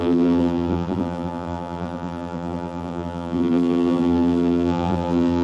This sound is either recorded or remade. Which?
remade